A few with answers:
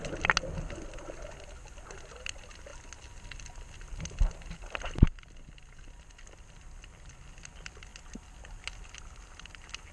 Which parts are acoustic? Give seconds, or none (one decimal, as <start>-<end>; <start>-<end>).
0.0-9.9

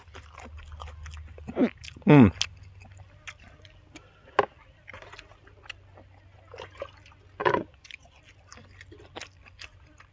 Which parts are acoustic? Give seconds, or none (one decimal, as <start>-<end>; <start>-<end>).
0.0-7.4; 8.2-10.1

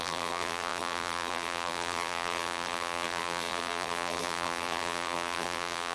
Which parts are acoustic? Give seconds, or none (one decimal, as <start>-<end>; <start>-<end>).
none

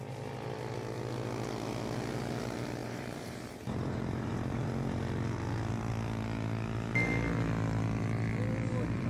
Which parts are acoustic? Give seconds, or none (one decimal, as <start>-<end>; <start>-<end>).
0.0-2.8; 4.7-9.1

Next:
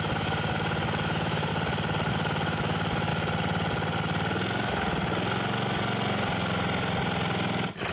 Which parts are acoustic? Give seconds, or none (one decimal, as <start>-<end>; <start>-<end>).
1.5-2.1; 3.1-7.9

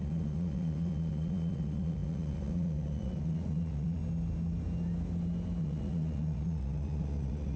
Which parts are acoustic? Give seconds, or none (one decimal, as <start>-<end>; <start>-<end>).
4.0-5.6

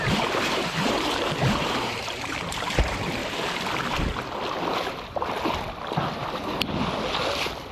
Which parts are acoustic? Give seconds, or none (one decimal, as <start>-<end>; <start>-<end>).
3.2-7.7

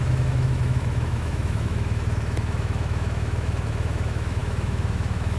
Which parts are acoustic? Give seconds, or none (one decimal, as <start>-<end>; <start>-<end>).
none